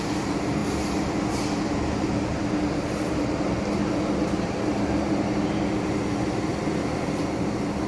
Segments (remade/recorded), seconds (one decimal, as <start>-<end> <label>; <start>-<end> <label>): 0.0-7.9 recorded